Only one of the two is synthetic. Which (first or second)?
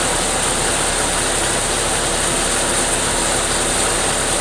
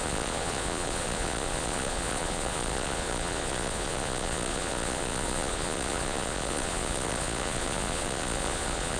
second